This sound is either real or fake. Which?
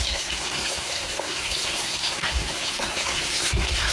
fake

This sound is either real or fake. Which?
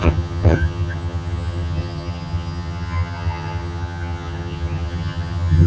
fake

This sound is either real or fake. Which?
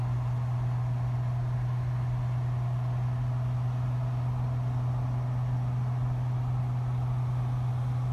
real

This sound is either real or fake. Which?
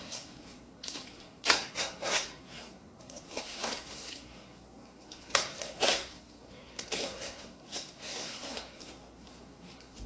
fake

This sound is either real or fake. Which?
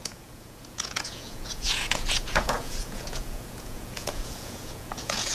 fake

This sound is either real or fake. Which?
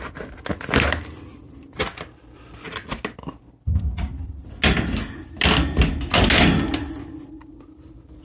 real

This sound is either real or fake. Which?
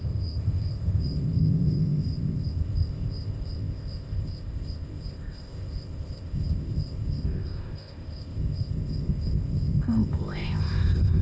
fake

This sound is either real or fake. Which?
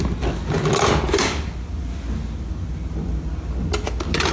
real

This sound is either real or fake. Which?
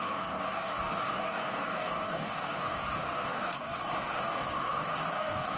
fake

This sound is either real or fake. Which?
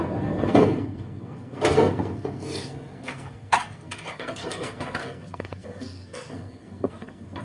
fake